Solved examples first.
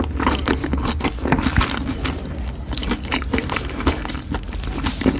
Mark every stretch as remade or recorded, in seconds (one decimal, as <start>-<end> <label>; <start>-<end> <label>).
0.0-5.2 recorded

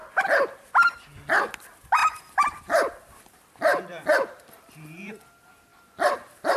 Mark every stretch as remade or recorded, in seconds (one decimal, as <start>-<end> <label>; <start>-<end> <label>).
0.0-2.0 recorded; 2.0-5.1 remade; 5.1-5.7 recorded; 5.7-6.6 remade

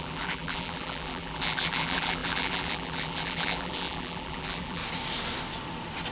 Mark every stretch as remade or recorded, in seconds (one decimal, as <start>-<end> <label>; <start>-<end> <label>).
0.0-4.8 remade; 4.8-6.1 recorded

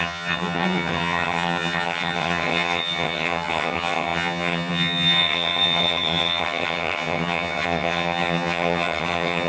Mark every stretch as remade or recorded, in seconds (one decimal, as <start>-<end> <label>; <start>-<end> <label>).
0.0-9.5 remade

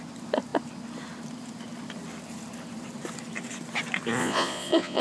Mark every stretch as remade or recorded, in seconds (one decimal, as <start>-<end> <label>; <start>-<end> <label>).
0.0-4.2 recorded; 4.2-5.0 remade

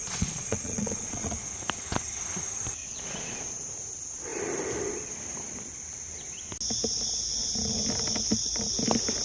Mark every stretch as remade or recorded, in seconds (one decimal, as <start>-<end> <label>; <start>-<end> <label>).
0.0-1.5 remade; 1.5-2.8 recorded; 2.8-3.7 remade; 3.7-9.2 recorded